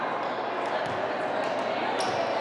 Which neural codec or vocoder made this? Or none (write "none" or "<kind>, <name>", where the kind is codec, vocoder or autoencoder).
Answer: none